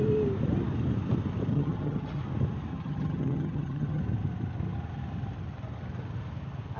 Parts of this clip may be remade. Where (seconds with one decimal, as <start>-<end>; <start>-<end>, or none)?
1.5-2.2; 2.7-4.0

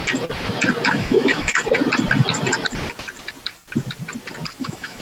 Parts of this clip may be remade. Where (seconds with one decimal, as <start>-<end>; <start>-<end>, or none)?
0.9-1.6; 4.6-5.0